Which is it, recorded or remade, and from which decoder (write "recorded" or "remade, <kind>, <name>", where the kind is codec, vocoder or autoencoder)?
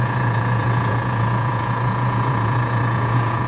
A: remade, vocoder, Vocos